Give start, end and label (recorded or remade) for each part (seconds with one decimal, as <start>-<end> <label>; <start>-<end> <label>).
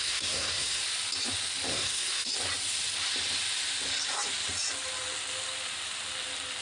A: 0.0-0.8 remade; 0.8-1.7 recorded; 1.7-2.3 remade; 2.3-6.6 recorded